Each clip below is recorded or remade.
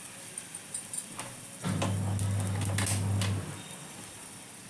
recorded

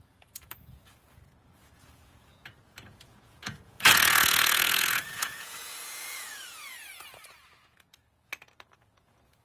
remade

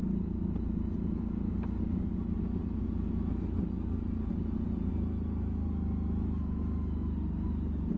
recorded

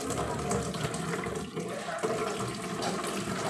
recorded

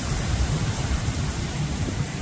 remade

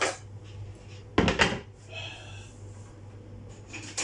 recorded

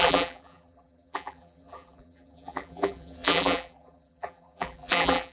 remade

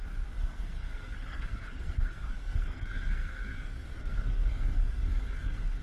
remade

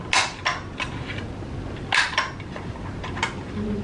recorded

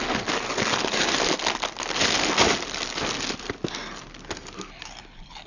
recorded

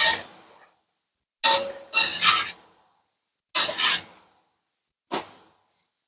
recorded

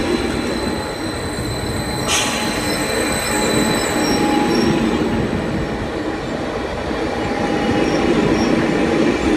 recorded